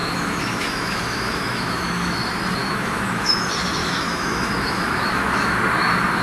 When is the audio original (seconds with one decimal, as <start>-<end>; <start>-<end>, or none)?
2.2-2.6; 3.4-3.8; 5.6-6.2